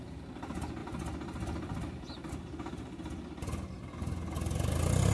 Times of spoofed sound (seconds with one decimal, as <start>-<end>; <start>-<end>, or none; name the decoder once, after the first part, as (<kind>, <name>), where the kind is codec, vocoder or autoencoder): none